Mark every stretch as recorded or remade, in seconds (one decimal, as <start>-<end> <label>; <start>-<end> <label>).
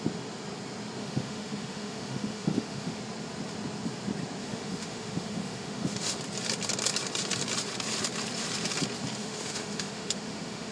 0.0-1.0 recorded; 1.0-3.0 remade; 3.0-4.4 recorded; 4.4-6.2 remade; 6.2-9.2 recorded; 9.2-10.7 remade